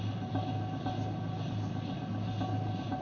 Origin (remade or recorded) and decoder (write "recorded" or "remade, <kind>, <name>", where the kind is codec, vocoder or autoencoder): recorded